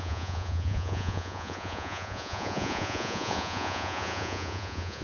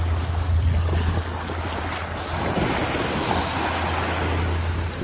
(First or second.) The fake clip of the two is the first